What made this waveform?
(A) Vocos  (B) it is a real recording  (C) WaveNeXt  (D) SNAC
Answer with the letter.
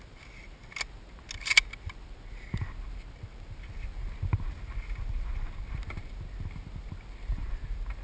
B